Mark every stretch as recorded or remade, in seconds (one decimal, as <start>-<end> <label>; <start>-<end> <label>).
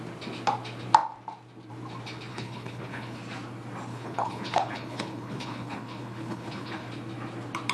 0.0-2.3 recorded; 2.3-3.2 remade; 3.2-3.9 recorded; 3.9-6.9 remade; 6.9-7.7 recorded